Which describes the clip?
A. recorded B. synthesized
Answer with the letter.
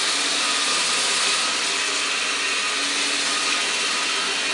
A